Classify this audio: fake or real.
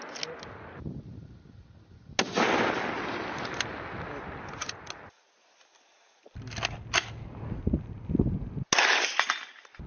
real